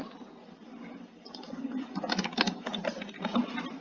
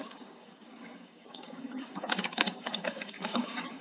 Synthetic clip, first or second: second